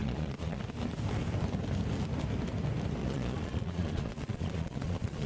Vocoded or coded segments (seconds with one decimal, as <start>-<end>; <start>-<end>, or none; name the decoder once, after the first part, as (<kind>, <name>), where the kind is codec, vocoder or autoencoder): 0.0-0.6 (vocoder, Vocos); 3.0-5.3